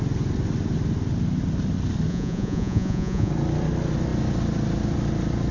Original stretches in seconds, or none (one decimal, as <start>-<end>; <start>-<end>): 0.0-2.1; 3.3-5.5